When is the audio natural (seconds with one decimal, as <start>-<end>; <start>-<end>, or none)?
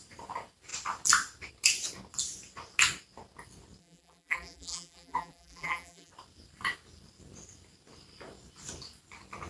0.0-3.8; 6.1-9.5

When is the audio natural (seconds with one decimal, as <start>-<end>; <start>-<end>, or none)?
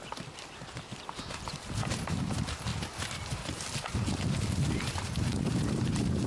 none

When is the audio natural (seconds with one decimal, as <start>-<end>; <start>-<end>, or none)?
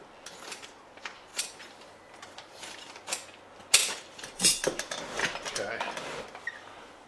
0.0-1.3; 3.1-3.8; 4.5-5.2; 5.9-7.1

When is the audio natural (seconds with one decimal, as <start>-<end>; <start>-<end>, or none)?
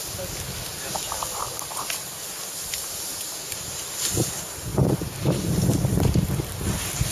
0.0-4.7; 6.1-7.1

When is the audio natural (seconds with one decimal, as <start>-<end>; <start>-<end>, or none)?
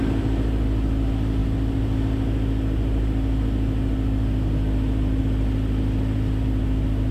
0.0-7.1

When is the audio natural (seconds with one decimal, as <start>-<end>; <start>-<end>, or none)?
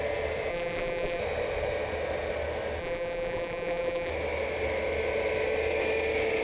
0.0-0.5; 1.2-2.8; 4.1-6.4